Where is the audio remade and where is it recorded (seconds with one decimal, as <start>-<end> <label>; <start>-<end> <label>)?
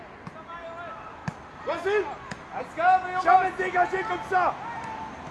0.0-5.3 recorded